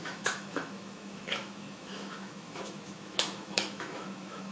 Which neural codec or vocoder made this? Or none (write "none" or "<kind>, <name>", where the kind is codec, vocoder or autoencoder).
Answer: autoencoder, DAC-VAE